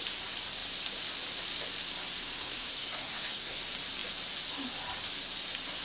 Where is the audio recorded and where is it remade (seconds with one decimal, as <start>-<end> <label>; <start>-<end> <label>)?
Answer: 0.0-2.2 recorded; 2.2-3.6 remade; 3.6-5.8 recorded